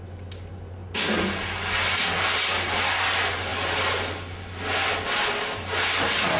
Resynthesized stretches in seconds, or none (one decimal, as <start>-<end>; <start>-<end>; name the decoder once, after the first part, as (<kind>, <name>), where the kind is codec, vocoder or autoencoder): none